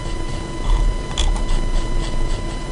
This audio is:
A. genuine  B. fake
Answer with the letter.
A